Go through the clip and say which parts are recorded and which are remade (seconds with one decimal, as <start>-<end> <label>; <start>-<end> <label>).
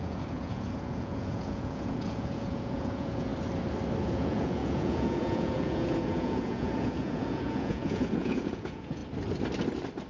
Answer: 0.0-3.3 remade; 3.3-4.0 recorded; 4.0-9.0 remade; 9.0-10.1 recorded